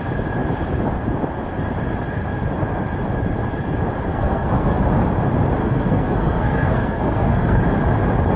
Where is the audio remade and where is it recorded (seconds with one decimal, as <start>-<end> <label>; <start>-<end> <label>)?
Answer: 0.0-4.1 recorded; 4.1-4.8 remade; 4.8-5.6 recorded; 5.6-7.6 remade; 7.6-8.4 recorded